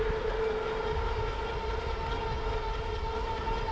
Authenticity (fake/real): real